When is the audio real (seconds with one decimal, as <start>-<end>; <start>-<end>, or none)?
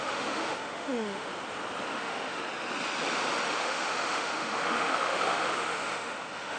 1.3-1.9; 2.4-3.5